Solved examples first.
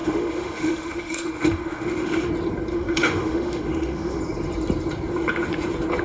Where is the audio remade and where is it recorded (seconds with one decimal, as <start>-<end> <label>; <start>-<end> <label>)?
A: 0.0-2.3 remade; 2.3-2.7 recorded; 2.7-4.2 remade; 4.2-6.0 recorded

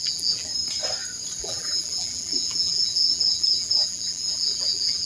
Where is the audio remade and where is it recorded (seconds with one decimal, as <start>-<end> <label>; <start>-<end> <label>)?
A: 0.0-0.5 remade; 0.5-1.4 recorded; 1.4-5.0 remade

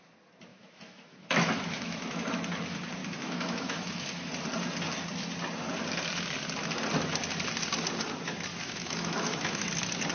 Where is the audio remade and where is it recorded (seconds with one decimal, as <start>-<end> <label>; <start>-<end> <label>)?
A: 0.0-0.5 recorded; 0.5-2.3 remade; 2.3-3.0 recorded; 3.0-4.3 remade; 4.3-8.5 recorded; 8.5-9.7 remade; 9.7-10.1 recorded